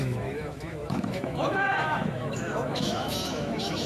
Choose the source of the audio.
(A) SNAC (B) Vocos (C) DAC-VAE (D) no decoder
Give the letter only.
C